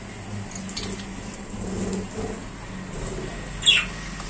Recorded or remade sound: recorded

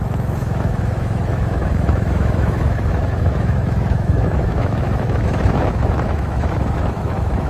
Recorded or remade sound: remade